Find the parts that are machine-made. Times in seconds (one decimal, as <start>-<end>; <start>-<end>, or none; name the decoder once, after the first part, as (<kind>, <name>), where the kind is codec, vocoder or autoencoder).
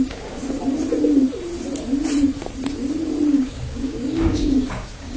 0.0-0.4 (codec, DAC); 3.3-5.2